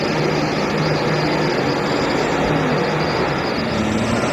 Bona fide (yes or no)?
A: yes